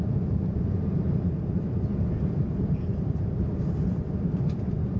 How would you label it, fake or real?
fake